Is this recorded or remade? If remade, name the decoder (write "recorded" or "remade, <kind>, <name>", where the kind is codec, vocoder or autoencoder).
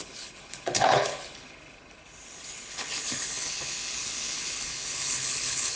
remade, codec, HILCodec